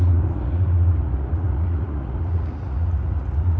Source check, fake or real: fake